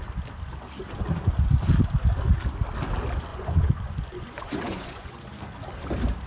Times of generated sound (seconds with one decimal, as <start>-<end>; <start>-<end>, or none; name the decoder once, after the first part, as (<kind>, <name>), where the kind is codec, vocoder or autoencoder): 3.3-5.3 (vocoder, Vocos)